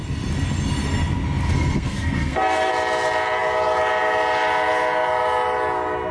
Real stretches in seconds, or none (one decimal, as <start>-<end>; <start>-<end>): 0.0-1.5; 2.7-6.1